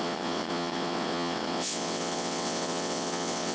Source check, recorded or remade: remade